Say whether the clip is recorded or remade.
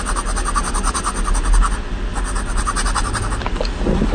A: recorded